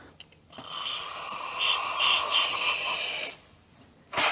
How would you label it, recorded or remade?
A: recorded